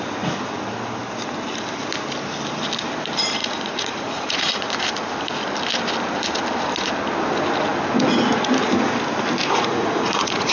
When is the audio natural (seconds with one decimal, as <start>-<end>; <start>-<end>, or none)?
0.0-3.4; 4.8-9.4